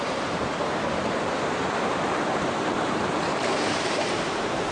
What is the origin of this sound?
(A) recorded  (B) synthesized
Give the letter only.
B